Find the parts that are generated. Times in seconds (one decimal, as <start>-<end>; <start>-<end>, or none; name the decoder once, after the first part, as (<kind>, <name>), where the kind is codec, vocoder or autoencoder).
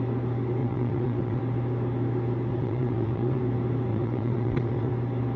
0.6-1.4 (vocoder, WaveNeXt); 2.5-3.4; 3.9-4.9